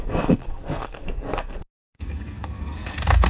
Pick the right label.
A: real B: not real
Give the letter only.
B